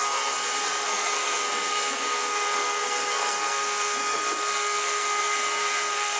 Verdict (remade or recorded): remade